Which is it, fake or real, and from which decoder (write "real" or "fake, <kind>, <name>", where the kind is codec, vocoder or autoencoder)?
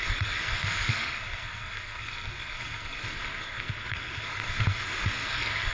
fake, codec, SNAC